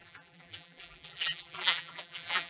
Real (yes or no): no